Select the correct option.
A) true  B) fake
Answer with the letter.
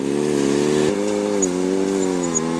A